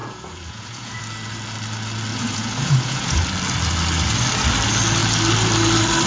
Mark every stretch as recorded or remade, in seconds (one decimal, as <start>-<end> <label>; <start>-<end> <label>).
0.0-1.0 remade; 1.0-2.1 recorded; 2.1-3.2 remade; 3.2-6.1 recorded